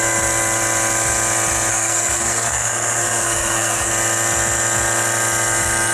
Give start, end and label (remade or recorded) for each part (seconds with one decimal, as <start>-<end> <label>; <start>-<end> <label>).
0.0-1.7 recorded; 1.7-3.9 remade; 3.9-5.9 recorded